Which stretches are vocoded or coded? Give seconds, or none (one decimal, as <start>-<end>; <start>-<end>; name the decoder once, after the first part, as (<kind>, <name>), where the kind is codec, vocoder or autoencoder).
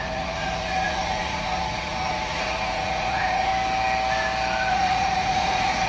0.0-3.5 (vocoder, Vocos); 4.7-5.9